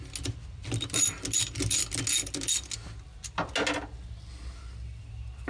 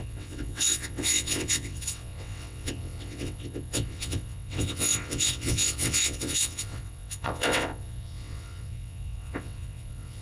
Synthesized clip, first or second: second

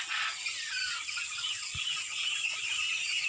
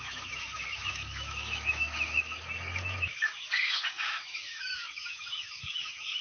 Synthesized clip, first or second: second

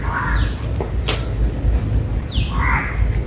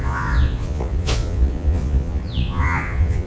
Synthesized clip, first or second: second